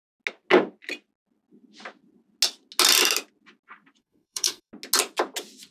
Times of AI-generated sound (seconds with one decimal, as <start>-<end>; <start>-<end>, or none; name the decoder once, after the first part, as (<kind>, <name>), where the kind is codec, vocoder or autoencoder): 4.0-4.7 (codec, SNAC)